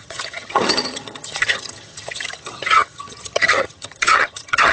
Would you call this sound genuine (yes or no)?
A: no